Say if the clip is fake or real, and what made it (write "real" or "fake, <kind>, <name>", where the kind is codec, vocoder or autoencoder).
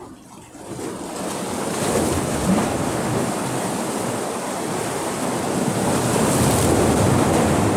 real